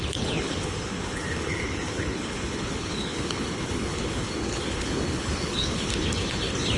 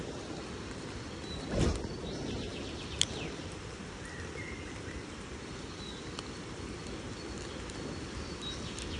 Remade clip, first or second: first